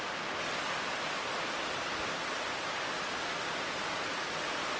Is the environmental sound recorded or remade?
recorded